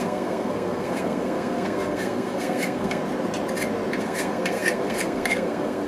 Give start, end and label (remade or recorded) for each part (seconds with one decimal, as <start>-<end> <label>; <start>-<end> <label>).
0.0-3.0 remade; 3.0-4.0 recorded; 4.0-5.9 remade